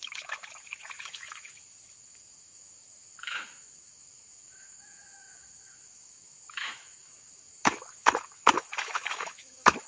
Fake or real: fake